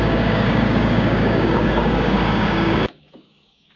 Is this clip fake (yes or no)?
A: yes